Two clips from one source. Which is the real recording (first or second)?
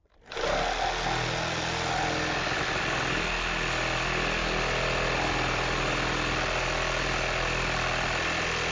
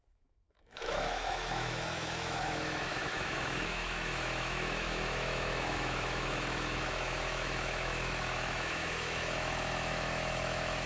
first